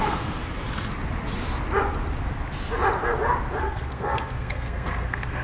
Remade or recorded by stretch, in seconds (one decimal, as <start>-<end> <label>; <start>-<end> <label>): 0.0-0.4 remade; 0.4-3.6 recorded; 3.6-5.4 remade